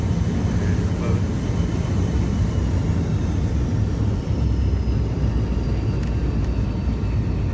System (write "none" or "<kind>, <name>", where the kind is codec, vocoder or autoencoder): none